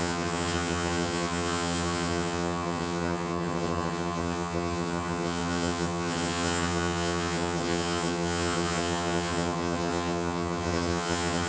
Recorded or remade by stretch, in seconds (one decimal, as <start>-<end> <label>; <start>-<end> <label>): 0.0-11.5 remade